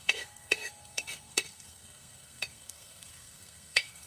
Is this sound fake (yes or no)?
yes